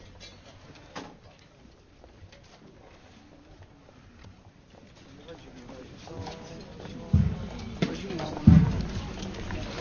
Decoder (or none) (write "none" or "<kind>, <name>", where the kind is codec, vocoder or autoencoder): none